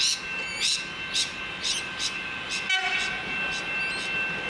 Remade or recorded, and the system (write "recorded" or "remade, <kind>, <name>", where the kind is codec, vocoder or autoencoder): recorded